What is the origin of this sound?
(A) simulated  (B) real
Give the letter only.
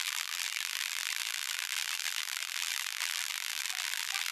A